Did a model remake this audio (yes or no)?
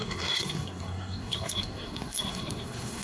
yes